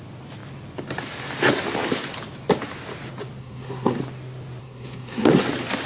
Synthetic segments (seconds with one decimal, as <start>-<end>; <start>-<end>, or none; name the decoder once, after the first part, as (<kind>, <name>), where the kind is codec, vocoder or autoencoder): 3.4-4.0 (codec, SNAC); 4.6-5.4